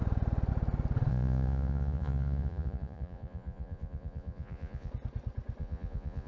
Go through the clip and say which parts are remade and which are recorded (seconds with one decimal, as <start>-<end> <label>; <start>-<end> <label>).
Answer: 0.0-1.1 recorded; 1.1-4.9 remade; 4.9-5.6 recorded; 5.6-6.3 remade